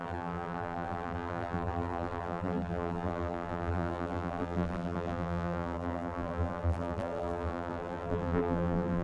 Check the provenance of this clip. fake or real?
fake